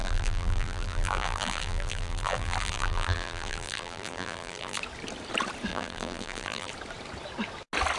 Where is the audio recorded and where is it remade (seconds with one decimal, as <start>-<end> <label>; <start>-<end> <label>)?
0.0-4.8 remade; 4.8-5.7 recorded; 5.7-6.7 remade; 6.7-8.0 recorded